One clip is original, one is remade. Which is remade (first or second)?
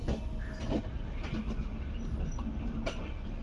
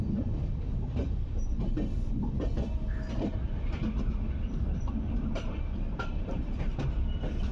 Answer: second